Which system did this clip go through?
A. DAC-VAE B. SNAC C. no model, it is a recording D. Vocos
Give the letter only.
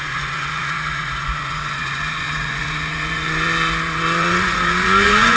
D